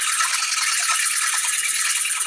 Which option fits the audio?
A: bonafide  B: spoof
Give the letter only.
A